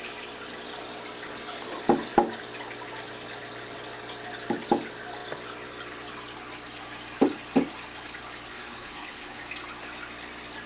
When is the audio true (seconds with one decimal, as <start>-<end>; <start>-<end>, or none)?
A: 0.0-8.5; 9.4-10.7